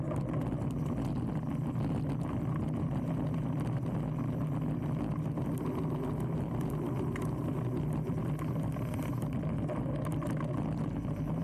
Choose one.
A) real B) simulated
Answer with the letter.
A